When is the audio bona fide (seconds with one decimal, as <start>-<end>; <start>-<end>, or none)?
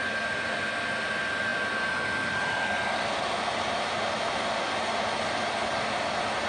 0.0-6.5